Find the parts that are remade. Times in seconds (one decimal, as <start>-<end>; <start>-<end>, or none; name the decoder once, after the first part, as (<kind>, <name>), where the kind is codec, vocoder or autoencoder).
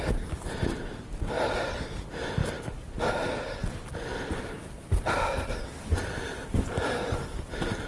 none